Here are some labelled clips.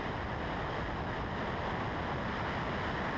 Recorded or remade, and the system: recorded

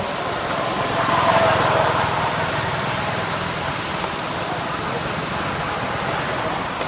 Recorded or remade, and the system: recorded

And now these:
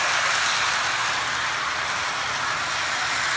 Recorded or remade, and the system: recorded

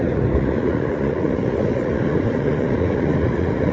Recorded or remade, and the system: remade, vocoder, Vocos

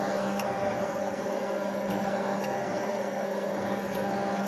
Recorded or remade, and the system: remade, codec, SNAC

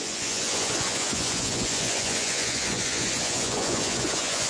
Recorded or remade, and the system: remade, vocoder, Vocos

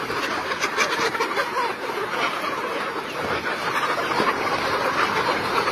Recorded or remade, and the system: recorded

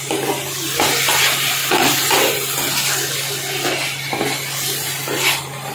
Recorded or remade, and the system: recorded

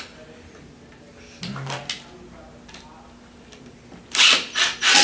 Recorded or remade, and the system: recorded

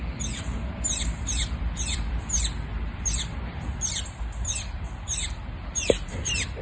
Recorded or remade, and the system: remade, vocoder, BigVGAN v2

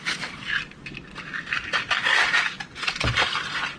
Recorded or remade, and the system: recorded